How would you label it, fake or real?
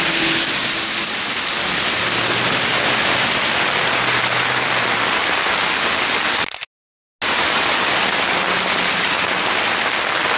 real